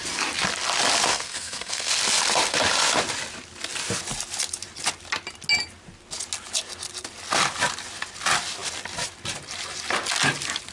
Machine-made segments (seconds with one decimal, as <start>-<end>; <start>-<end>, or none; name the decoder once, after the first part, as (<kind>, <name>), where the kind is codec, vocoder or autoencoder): 1.1-1.9 (codec, SNAC)